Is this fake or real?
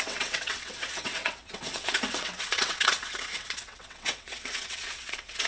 fake